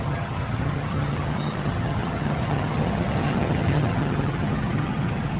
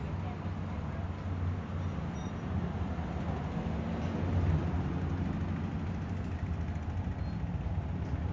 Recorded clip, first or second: second